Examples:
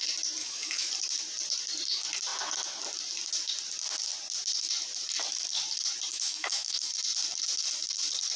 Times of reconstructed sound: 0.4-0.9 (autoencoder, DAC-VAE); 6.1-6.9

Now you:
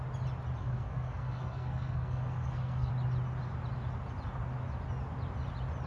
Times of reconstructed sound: 0.6-2.9 (codec, SNAC)

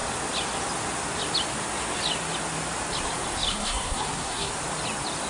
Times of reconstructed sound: 3.5-4.5 (codec, SNAC)